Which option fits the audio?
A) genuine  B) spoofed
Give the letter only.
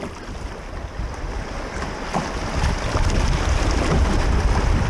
A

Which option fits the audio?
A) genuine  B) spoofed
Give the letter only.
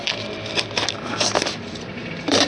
B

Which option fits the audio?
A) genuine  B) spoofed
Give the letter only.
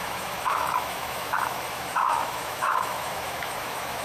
B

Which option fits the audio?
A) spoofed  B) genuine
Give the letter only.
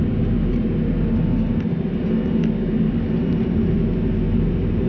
B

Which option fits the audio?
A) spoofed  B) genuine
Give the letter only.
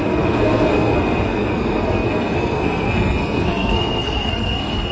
A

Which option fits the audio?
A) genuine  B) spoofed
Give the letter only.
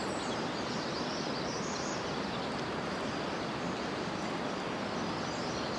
A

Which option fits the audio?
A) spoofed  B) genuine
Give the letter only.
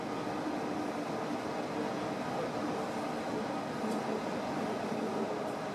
B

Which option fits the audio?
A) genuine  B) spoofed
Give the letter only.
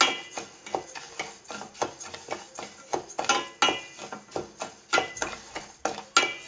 A